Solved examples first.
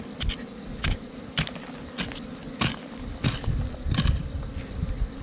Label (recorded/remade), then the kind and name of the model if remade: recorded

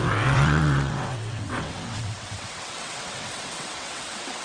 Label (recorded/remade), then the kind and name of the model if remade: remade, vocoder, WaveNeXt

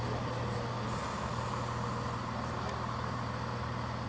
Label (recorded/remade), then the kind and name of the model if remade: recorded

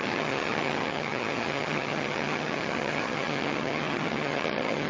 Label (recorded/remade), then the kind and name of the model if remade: remade, vocoder, HiFi-GAN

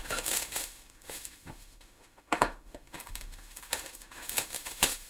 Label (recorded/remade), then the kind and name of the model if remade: remade, autoencoder, DAC-VAE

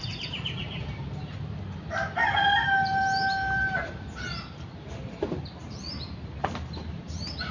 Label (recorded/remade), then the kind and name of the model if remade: remade, vocoder, BigVGAN v2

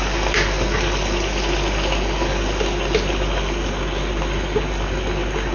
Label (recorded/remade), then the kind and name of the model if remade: recorded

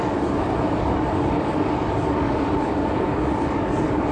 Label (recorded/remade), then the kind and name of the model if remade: remade, codec, DAC